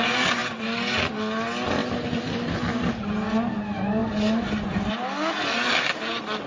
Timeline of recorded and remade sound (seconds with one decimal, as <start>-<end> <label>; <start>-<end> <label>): 0.0-6.5 recorded